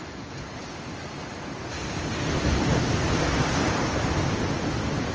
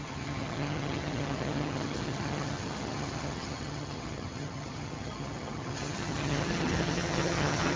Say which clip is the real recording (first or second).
first